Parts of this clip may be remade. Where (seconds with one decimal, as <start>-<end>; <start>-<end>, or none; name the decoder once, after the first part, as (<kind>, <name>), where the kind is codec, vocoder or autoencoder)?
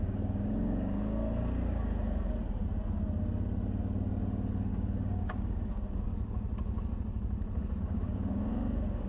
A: 0.0-1.2 (codec, DAC); 4.7-6.1; 7.8-9.1